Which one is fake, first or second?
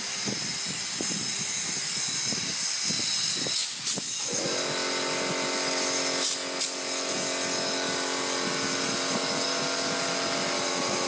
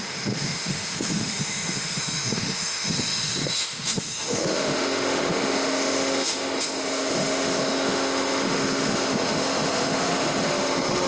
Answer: second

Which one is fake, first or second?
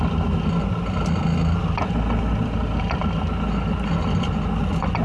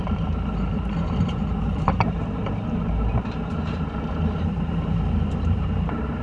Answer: second